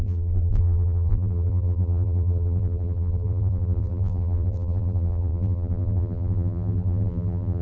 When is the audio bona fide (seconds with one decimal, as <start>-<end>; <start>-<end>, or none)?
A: none